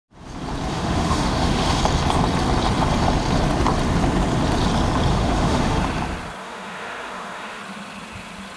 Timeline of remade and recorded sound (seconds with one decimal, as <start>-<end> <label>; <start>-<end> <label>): 0.0-0.7 recorded; 0.7-1.8 remade; 1.8-5.1 recorded; 5.1-5.8 remade; 5.8-6.4 recorded; 6.4-7.6 remade; 7.6-8.6 recorded